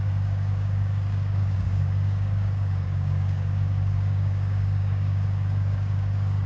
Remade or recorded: remade